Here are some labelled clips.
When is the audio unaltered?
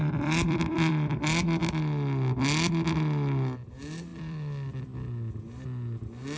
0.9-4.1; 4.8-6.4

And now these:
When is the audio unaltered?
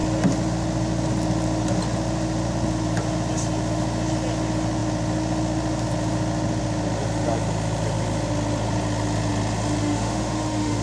0.0-9.8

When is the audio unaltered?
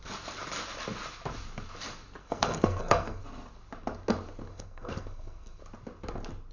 0.0-2.2; 3.2-4.5; 5.6-6.5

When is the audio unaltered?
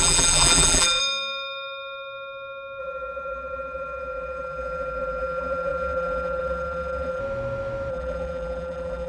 1.0-2.8; 7.2-7.9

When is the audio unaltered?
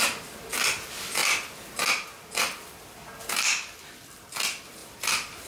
0.0-4.8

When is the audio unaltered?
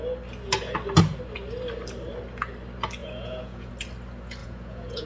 0.0-3.0; 3.7-4.4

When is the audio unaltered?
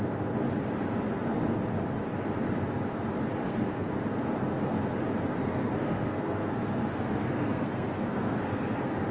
0.0-3.4; 3.9-5.4